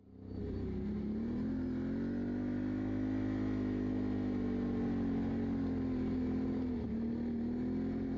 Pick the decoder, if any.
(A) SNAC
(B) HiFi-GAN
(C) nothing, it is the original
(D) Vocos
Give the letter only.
C